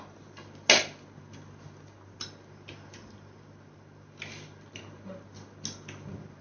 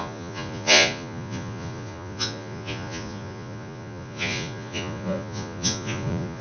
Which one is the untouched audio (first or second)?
first